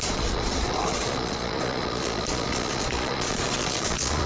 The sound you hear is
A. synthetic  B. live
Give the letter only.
A